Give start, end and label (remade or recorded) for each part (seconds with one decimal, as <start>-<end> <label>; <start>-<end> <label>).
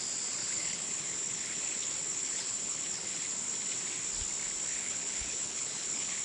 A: 0.0-0.4 recorded; 0.4-3.5 remade; 3.5-4.7 recorded; 4.7-6.2 remade